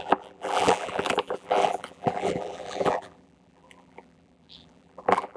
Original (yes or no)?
no